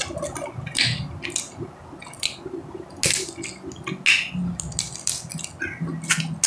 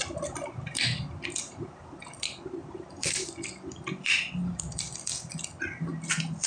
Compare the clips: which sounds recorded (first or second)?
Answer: first